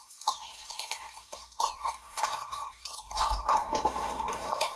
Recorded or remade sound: remade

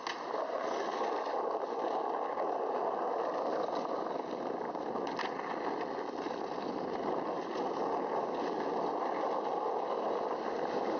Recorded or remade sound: recorded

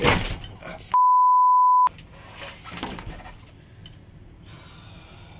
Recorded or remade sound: recorded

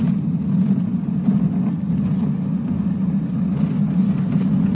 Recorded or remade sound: recorded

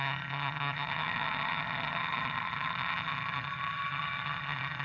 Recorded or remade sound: remade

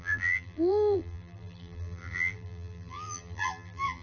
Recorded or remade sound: remade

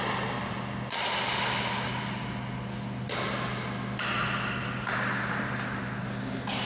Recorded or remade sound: recorded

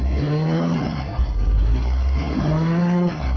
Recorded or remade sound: remade